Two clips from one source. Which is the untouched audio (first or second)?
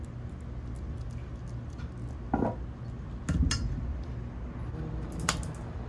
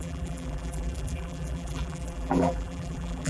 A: first